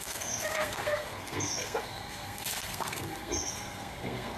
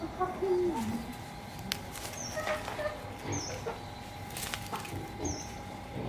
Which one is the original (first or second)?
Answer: second